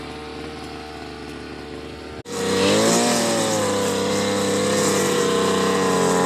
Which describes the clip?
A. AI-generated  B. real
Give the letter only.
B